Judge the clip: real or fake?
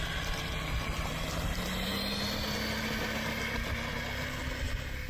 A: real